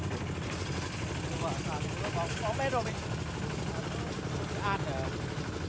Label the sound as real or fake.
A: real